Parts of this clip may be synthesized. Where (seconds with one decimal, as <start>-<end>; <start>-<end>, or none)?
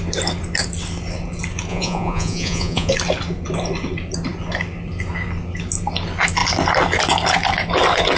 1.7-2.9